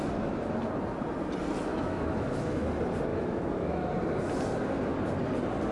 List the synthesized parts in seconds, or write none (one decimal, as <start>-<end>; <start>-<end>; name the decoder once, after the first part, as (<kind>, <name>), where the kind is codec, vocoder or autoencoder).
1.7-2.7 (autoencoder, DAC-VAE); 3.1-3.9